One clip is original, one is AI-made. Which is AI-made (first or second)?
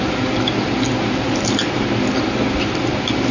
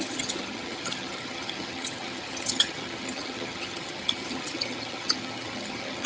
second